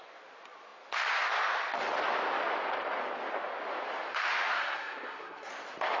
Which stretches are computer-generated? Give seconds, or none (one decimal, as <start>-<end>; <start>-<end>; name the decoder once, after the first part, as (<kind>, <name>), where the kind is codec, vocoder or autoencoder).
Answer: 4.5-5.5 (codec, SNAC)